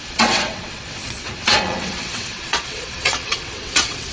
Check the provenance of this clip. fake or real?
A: fake